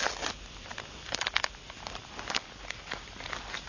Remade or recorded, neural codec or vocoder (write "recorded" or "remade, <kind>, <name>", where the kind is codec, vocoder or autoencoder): recorded